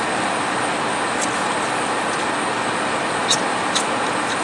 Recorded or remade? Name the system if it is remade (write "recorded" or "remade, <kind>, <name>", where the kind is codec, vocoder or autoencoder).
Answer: recorded